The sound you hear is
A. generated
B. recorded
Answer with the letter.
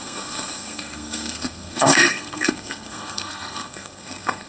A